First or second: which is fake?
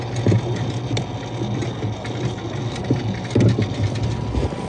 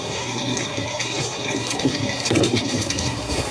second